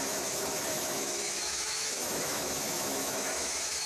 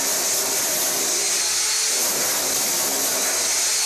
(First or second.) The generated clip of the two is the first